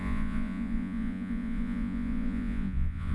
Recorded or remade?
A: remade